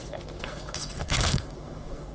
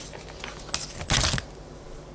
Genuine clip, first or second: second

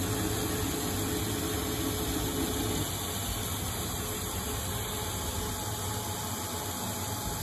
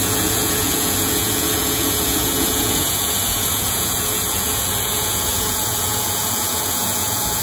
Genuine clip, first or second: first